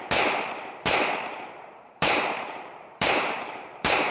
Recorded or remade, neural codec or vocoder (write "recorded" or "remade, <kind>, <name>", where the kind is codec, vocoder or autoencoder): remade, vocoder, BigVGAN v2